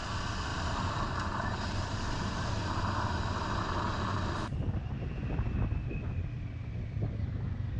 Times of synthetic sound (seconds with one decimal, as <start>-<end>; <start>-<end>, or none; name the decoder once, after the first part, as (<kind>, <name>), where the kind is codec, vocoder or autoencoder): 0.5-2.7 (vocoder, BigVGAN v2)